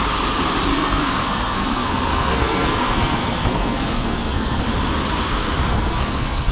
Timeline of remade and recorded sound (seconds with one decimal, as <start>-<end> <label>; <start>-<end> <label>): 0.0-0.7 recorded; 0.7-4.6 remade; 4.6-5.7 recorded; 5.7-6.5 remade